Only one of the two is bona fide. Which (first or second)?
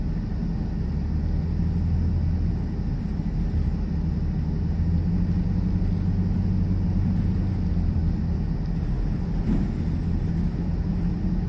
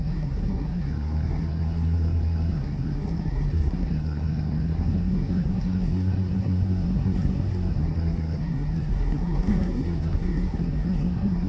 first